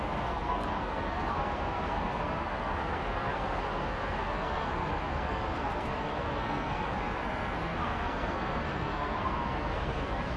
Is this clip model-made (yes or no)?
yes